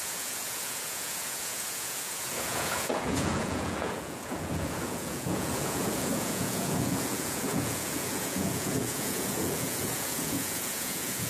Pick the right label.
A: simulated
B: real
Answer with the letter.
A